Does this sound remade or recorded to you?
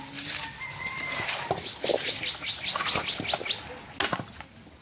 recorded